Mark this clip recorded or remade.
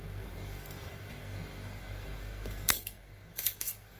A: remade